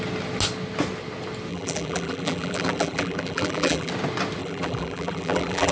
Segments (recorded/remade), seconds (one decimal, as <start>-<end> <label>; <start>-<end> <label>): 0.0-1.5 recorded; 1.5-3.9 remade; 3.9-4.4 recorded; 4.4-5.7 remade